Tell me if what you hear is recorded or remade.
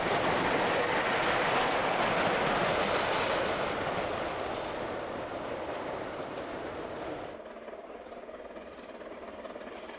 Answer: recorded